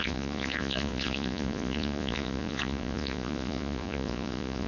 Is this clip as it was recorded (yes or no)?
no